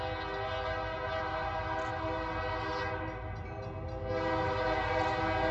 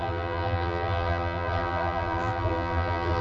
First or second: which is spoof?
second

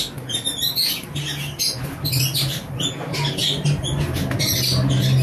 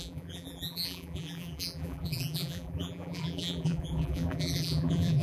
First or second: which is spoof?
second